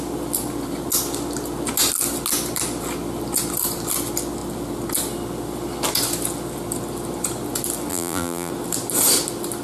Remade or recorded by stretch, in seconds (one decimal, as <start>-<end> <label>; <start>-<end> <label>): 0.0-7.9 recorded; 7.9-8.5 remade; 8.5-9.6 recorded